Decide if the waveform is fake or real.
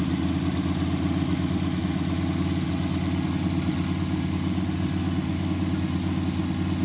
real